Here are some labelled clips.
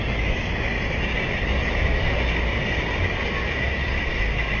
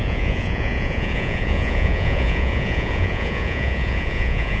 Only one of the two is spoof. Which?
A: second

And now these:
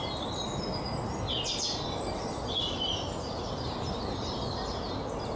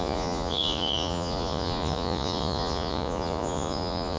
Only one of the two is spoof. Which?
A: second